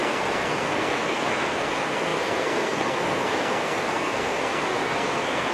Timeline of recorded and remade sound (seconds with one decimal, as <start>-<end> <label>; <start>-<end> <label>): 0.0-5.5 remade